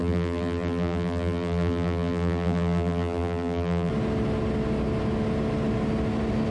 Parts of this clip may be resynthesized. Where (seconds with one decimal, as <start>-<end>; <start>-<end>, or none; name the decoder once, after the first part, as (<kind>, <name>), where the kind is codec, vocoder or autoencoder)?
0.0-3.9 (vocoder, BigVGAN v2)